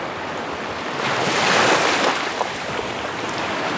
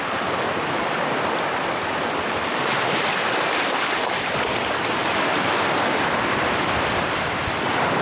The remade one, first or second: second